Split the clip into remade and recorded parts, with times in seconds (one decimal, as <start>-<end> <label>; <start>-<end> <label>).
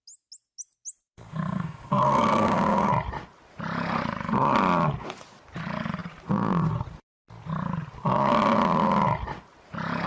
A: 0.0-1.1 recorded; 1.1-2.9 remade; 2.9-10.1 recorded